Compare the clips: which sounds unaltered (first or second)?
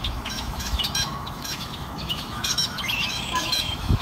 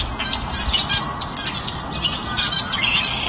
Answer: second